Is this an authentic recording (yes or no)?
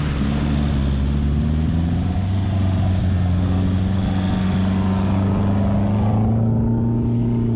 yes